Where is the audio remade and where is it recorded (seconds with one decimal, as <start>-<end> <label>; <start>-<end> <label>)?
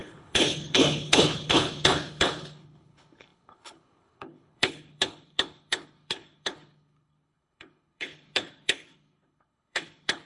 0.0-10.3 remade